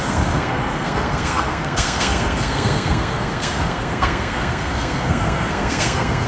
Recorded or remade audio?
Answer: remade